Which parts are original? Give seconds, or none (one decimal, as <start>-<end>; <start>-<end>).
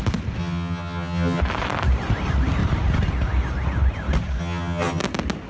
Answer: 0.0-0.4; 1.4-4.4; 5.0-5.5